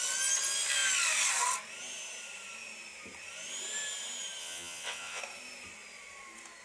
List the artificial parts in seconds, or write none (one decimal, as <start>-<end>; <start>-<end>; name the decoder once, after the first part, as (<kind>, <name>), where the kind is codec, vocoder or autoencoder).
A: 4.4-5.2 (vocoder, WaveNeXt)